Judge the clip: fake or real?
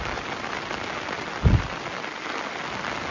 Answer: real